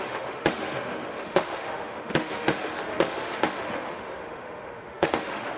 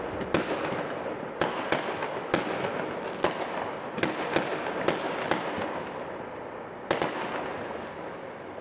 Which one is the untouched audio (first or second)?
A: second